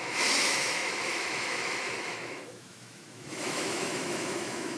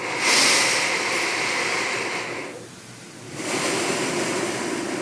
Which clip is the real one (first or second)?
second